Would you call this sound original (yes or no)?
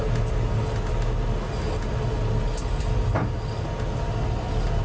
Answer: yes